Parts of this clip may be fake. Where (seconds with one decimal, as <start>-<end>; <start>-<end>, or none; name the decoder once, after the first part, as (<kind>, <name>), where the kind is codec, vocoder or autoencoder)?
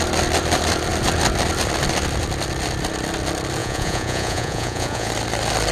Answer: 3.6-5.1 (vocoder, Vocos)